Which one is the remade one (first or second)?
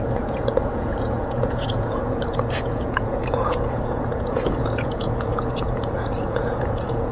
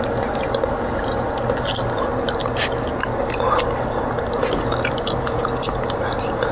first